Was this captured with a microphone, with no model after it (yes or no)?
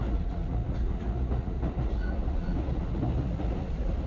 no